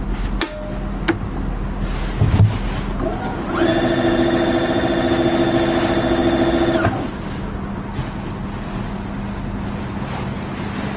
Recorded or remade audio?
recorded